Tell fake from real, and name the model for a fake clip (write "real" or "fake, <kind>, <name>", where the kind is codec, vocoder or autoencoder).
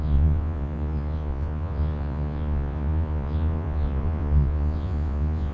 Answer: fake, vocoder, Vocos